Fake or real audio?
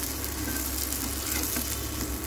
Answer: real